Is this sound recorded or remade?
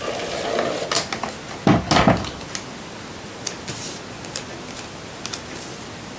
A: recorded